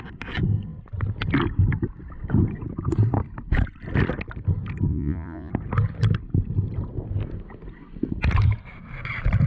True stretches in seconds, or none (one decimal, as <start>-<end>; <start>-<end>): 0.0-4.9; 5.5-9.5